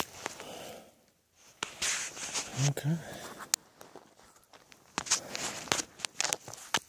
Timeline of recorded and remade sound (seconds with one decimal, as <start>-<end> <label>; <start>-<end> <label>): 0.0-6.9 recorded